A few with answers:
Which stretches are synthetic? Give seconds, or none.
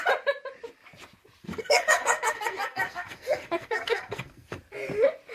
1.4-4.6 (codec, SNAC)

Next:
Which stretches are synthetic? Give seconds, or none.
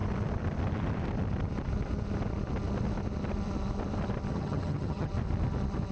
4.3-5.1 (vocoder, HiFi-GAN)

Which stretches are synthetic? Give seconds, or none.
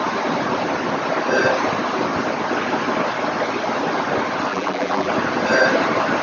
4.5-5.1 (vocoder, BigVGAN v2)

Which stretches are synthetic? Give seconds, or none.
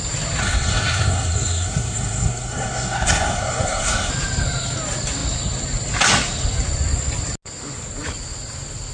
0.4-4.1 (codec, SNAC)